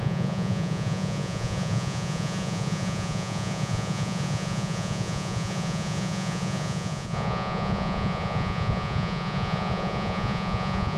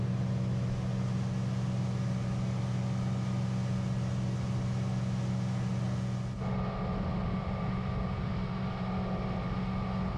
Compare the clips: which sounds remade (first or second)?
first